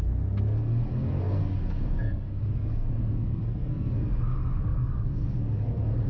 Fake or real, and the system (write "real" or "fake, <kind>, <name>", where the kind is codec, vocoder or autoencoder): fake, codec, SNAC